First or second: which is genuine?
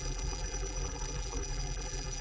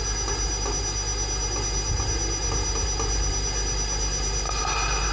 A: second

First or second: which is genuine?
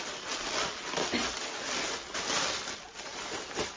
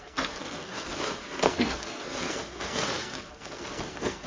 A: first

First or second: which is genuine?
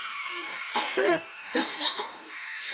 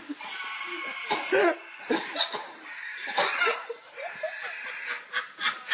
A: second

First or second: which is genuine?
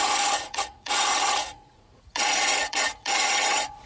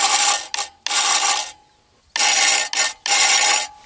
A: second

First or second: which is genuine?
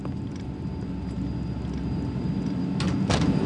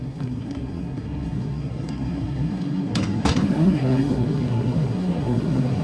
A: first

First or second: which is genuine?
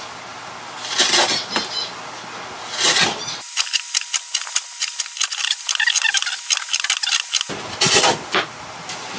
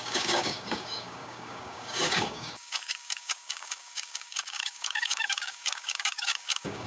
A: first